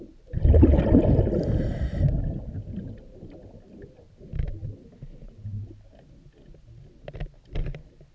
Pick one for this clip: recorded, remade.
recorded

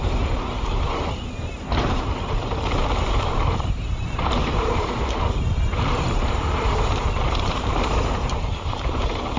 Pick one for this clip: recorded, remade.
remade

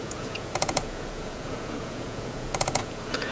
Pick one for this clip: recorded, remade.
remade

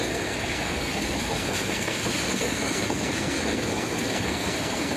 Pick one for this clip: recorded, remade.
remade